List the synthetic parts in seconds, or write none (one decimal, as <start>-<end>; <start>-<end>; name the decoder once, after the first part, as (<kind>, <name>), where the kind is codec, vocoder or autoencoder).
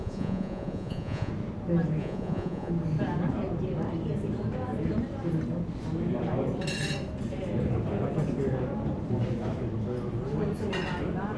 0.0-1.3 (vocoder, Vocos); 2.0-2.7